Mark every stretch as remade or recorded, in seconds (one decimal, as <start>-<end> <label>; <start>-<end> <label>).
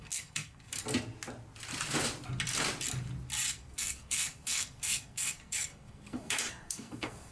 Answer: 0.0-0.8 remade; 0.8-3.5 recorded; 3.5-7.3 remade